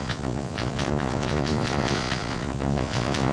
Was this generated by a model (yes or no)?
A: yes